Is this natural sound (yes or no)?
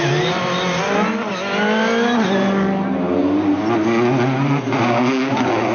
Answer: yes